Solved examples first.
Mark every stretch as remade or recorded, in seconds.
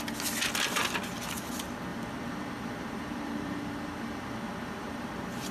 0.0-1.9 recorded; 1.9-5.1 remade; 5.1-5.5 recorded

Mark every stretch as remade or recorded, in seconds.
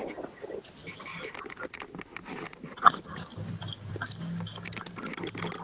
0.0-5.6 recorded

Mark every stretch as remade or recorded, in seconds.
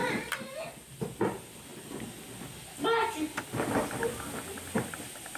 0.0-0.6 remade; 0.6-5.4 recorded